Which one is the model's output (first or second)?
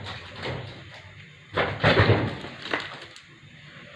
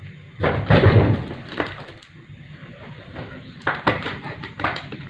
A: second